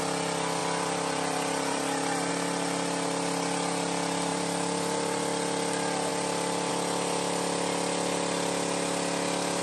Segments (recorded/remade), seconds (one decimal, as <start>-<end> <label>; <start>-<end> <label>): 0.0-0.6 recorded; 0.6-2.3 remade; 2.3-4.3 recorded; 4.3-5.2 remade; 5.2-6.1 recorded; 6.1-6.7 remade; 6.7-9.6 recorded